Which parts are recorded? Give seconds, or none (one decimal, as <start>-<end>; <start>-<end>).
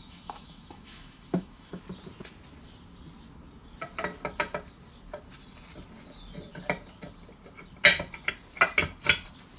1.8-9.6